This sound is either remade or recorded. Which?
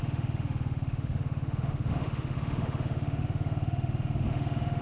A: remade